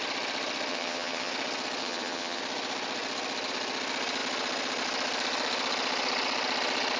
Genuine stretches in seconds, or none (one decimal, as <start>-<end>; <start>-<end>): 0.0-0.7; 1.3-1.8; 2.4-7.0